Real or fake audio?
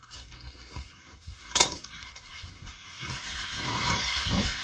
fake